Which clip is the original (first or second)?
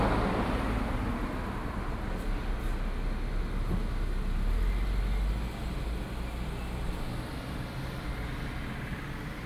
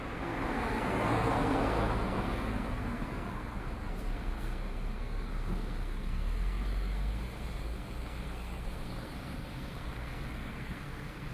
first